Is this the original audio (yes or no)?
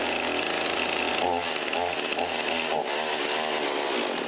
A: yes